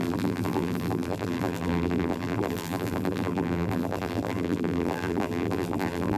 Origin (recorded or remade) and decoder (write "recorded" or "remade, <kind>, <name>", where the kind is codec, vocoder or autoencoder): remade, vocoder, BigVGAN v2